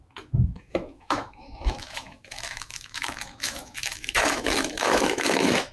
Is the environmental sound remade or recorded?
remade